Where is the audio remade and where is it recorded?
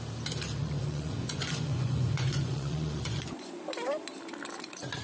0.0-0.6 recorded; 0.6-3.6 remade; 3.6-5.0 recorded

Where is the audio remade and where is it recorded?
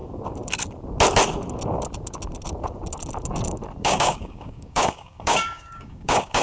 0.0-3.8 recorded; 3.8-6.4 remade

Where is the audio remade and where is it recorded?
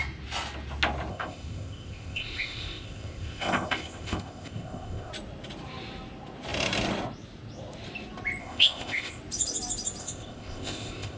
0.0-1.1 recorded; 1.1-5.1 remade; 5.1-8.4 recorded; 8.4-9.2 remade; 9.2-10.0 recorded; 10.0-11.2 remade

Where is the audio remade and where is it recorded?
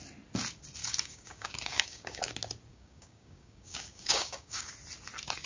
0.0-0.8 recorded; 0.8-2.3 remade; 2.3-2.7 recorded; 2.7-4.7 remade; 4.7-5.5 recorded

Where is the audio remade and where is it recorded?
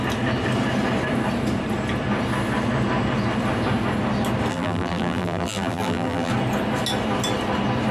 0.0-4.5 recorded; 4.5-6.3 remade; 6.3-7.9 recorded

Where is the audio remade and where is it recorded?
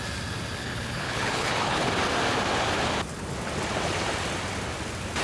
0.0-0.6 recorded; 0.6-1.9 remade; 1.9-5.2 recorded